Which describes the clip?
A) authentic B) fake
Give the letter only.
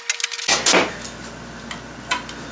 A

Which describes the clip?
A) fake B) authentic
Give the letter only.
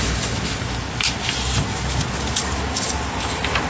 B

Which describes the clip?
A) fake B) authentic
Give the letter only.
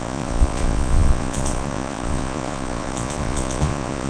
A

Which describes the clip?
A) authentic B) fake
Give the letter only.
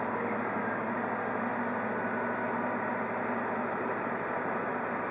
A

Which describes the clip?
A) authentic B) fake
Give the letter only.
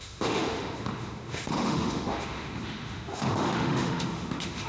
B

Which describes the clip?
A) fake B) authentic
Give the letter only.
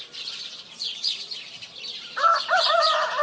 A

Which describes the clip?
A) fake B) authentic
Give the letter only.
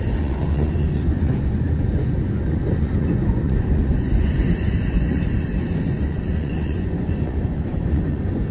A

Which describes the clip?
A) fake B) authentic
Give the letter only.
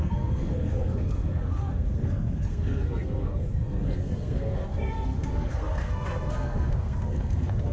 A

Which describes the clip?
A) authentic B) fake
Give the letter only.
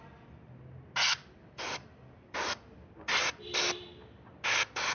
A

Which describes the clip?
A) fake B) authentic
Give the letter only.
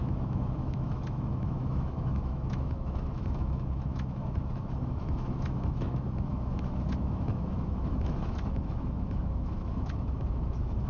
A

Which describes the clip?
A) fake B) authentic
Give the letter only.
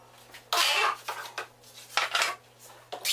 B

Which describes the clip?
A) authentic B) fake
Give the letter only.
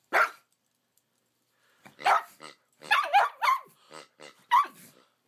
A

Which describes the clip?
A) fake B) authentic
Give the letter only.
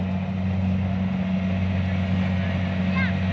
B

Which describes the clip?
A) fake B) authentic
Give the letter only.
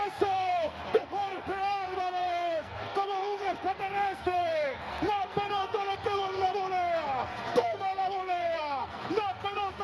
A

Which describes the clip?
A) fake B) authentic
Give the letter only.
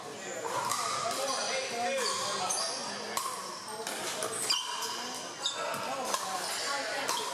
B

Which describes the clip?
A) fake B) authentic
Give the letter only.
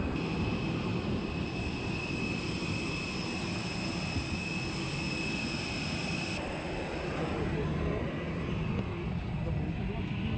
B